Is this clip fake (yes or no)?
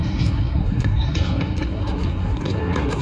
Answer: yes